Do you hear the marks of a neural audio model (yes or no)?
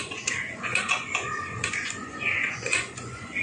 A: yes